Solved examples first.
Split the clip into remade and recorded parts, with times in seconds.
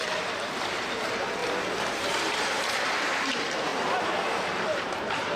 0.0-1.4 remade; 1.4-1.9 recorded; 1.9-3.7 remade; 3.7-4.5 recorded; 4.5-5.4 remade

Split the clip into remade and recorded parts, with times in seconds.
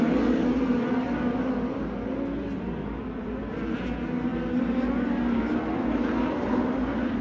0.0-7.2 recorded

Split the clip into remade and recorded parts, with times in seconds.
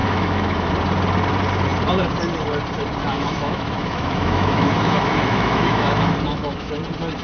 0.0-0.7 remade; 0.7-3.0 recorded; 3.0-6.7 remade; 6.7-7.2 recorded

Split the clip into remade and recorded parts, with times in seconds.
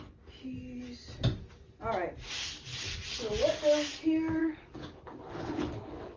0.0-4.4 recorded; 4.4-6.2 remade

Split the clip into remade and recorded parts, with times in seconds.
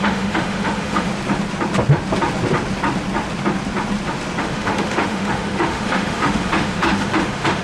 0.0-1.1 remade; 1.1-4.4 recorded; 4.4-7.6 remade